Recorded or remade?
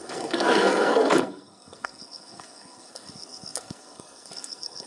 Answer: remade